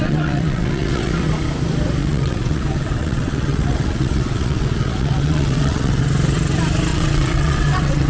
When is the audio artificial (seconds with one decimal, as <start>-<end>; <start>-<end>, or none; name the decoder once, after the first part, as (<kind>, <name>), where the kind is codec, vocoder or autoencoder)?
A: 0.0-1.3 (vocoder, WaveNeXt); 2.0-6.0; 6.9-8.1